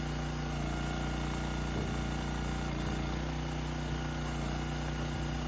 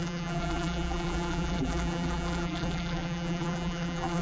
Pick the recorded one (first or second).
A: first